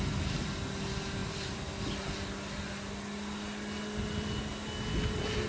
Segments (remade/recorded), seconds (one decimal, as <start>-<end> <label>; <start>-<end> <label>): 0.0-5.5 recorded